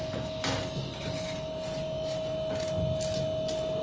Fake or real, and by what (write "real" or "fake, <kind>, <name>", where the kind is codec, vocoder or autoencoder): real